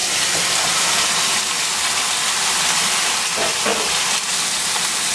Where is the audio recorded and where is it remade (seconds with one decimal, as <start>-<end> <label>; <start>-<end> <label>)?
0.0-3.1 remade; 3.1-3.7 recorded; 3.7-4.6 remade; 4.6-5.1 recorded